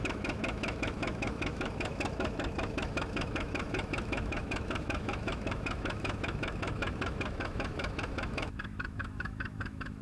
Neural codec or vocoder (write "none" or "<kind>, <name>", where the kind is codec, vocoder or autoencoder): autoencoder, DAC-VAE